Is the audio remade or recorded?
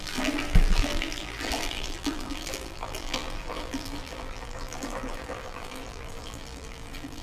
remade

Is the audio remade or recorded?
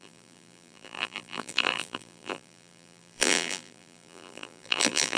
remade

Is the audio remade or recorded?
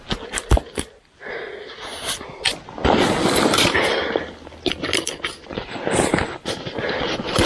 recorded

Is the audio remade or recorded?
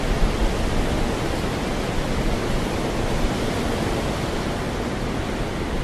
recorded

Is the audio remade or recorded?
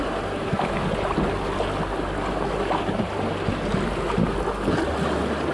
recorded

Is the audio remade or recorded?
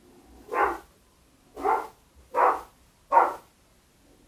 recorded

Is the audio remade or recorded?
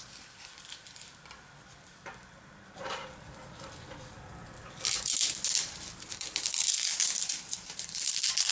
remade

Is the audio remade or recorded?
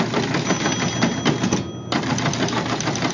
recorded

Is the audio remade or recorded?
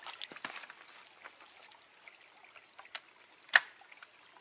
recorded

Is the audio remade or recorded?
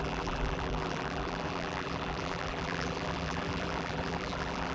remade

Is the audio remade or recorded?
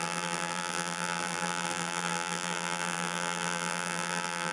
remade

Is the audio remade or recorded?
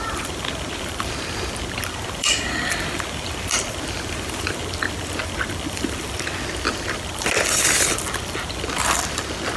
remade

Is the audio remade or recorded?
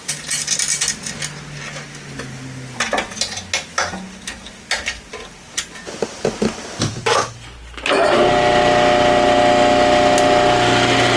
recorded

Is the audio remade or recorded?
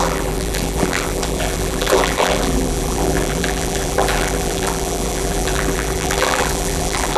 remade